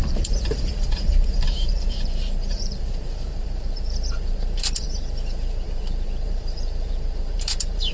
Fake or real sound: fake